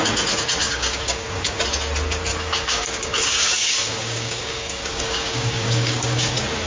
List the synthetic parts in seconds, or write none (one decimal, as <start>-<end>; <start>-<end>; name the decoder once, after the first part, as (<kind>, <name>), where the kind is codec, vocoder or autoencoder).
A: 0.6-1.6 (codec, DAC); 2.3-6.3